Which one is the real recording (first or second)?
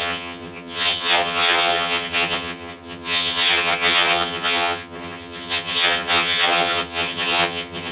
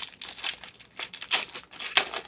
second